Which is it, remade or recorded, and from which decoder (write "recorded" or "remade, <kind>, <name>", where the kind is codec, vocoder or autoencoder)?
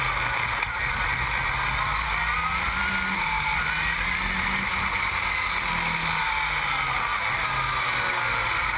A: recorded